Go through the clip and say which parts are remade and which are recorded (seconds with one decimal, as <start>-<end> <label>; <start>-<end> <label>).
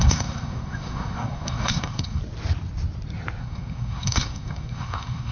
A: 0.0-2.2 remade; 2.2-3.4 recorded; 3.4-5.3 remade